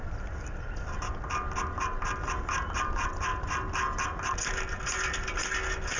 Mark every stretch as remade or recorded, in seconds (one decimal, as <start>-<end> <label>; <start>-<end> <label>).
0.0-6.0 recorded